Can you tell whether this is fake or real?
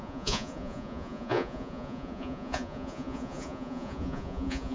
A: fake